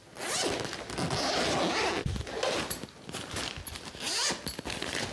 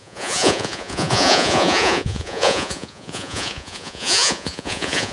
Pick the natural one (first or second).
first